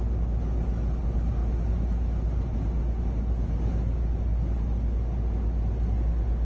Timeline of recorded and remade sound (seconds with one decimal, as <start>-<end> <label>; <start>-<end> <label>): 0.0-6.4 recorded